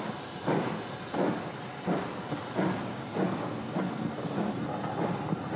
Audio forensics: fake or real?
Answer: real